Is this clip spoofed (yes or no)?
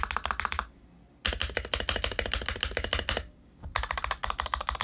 no